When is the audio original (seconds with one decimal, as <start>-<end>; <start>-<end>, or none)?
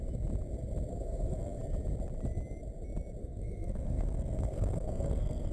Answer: 0.0-0.9; 1.6-3.2